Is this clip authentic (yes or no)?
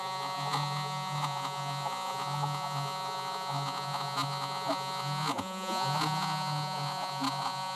no